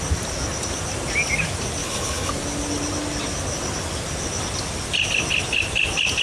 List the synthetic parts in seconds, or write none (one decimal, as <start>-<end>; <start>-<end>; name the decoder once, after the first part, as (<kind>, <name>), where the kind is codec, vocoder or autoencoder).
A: 1.8-2.3 (codec, HILCodec)